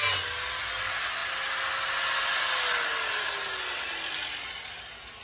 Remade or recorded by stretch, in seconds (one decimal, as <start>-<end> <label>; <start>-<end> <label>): 0.0-5.2 recorded